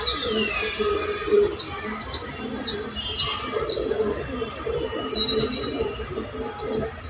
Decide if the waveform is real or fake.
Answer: real